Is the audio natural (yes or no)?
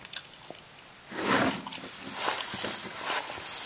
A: yes